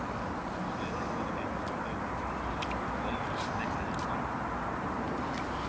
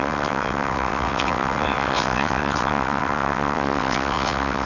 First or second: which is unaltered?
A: first